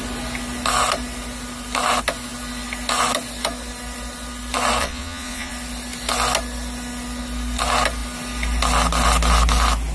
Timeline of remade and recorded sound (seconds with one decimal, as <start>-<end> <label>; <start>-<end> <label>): 0.0-4.8 recorded; 4.8-5.5 remade; 5.5-9.9 recorded